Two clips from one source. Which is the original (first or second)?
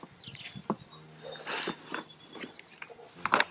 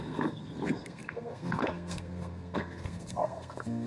first